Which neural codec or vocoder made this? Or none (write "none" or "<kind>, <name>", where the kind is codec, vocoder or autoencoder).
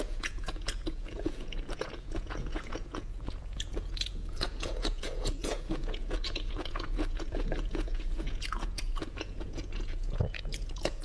vocoder, Vocos